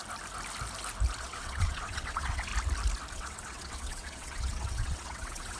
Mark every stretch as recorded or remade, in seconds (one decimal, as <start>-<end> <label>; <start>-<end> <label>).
0.0-1.2 recorded; 1.2-2.5 remade; 2.5-3.1 recorded; 3.1-5.6 remade